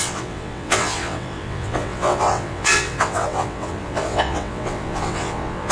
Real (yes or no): no